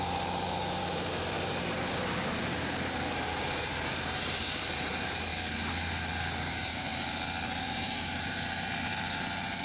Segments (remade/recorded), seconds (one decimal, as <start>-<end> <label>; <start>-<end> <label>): 0.0-5.3 remade; 5.3-6.5 recorded; 6.5-6.9 remade; 6.9-7.6 recorded; 7.6-9.6 remade